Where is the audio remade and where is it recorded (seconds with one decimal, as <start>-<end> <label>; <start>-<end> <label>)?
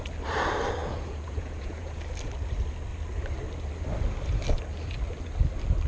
0.0-0.8 recorded; 0.8-2.0 remade; 2.0-5.9 recorded